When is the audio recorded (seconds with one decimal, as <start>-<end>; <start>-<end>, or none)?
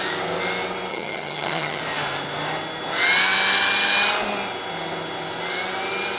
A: 0.0-0.9; 1.8-6.2